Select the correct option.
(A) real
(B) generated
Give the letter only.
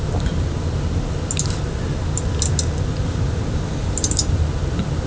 A